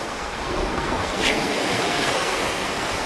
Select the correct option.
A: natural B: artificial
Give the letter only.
B